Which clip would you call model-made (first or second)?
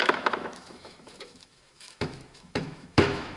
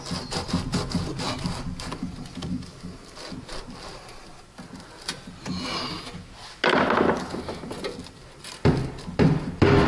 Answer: first